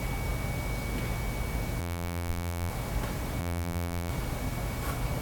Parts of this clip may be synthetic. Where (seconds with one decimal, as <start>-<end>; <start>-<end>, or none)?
1.8-2.7; 3.4-4.1